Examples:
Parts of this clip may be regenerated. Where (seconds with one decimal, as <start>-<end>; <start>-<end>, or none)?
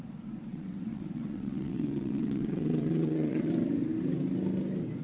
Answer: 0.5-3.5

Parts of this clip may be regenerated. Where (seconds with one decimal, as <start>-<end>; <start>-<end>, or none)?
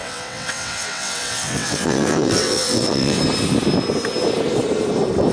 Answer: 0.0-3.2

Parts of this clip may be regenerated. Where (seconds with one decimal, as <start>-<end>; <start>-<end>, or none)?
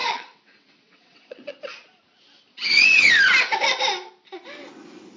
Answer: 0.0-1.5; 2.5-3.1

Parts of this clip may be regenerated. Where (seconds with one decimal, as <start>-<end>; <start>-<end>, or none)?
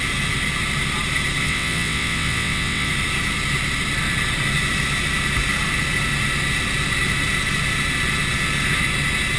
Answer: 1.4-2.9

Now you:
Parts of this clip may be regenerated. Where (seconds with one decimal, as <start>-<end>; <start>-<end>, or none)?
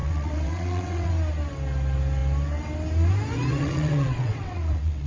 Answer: 0.0-1.1; 3.5-5.1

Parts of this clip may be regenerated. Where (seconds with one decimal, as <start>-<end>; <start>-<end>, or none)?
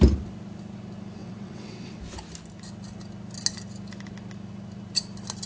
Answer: 1.2-2.0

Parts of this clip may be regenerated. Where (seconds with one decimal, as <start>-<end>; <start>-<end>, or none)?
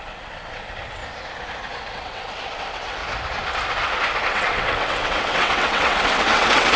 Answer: 0.0-1.0; 1.9-3.0; 4.3-6.8